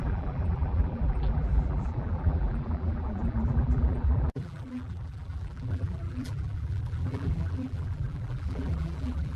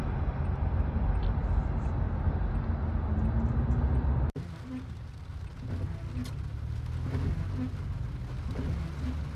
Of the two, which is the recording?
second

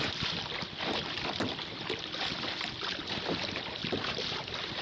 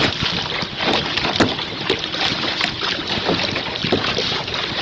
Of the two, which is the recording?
second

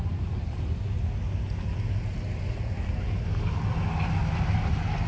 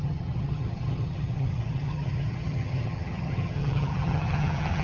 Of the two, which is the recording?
first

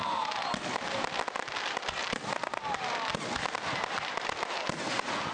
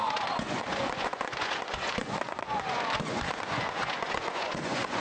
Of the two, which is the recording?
first